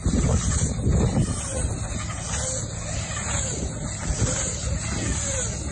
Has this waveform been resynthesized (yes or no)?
no